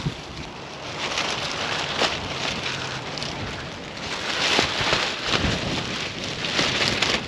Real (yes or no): yes